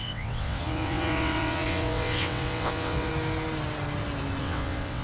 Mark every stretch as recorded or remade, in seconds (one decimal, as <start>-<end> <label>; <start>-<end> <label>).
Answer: 0.0-3.1 remade; 3.1-4.4 recorded; 4.4-5.0 remade